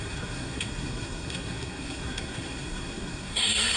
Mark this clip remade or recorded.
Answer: remade